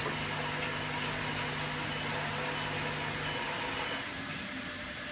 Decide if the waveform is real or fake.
real